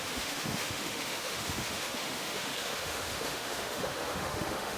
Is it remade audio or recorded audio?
remade